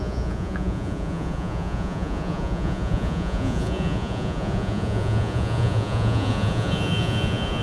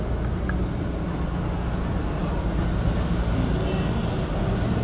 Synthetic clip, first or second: first